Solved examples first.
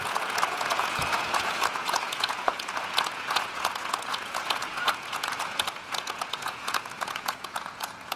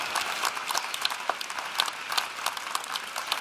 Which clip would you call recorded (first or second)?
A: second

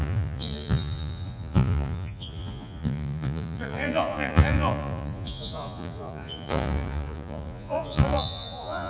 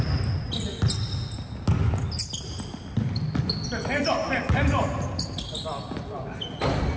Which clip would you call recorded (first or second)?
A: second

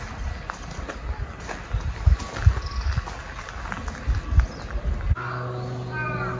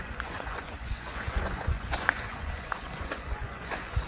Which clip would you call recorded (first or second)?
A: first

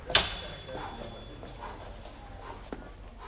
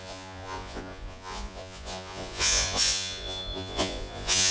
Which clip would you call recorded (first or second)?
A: first